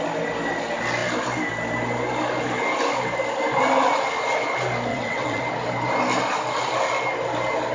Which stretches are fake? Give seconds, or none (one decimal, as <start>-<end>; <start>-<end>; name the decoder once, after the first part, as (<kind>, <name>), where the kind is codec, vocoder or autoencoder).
4.9-5.4 (vocoder, WaveNeXt)